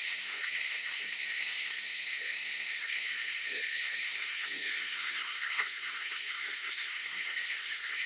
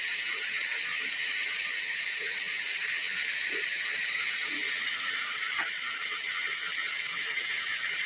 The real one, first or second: second